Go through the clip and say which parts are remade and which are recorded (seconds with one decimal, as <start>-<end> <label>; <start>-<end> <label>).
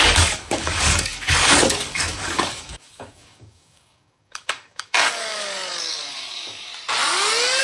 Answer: 0.0-6.7 remade; 6.7-7.6 recorded